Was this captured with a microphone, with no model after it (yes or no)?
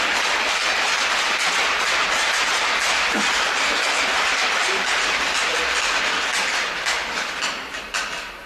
yes